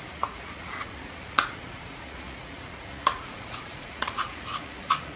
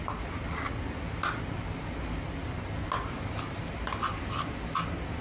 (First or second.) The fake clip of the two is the first